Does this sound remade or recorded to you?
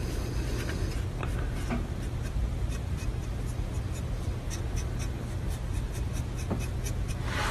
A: recorded